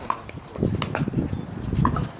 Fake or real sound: fake